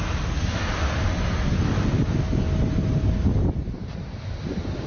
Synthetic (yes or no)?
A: no